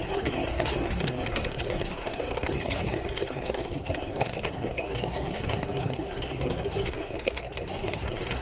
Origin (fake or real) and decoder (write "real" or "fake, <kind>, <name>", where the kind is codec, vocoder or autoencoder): fake, codec, SNAC